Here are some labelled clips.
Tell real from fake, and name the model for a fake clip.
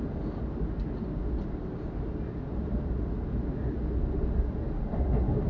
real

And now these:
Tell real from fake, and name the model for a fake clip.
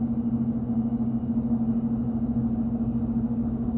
real